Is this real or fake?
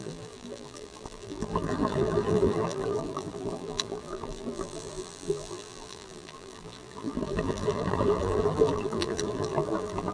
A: fake